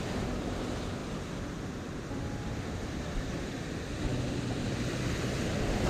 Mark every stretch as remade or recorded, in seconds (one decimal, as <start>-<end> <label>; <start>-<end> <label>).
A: 0.0-5.9 remade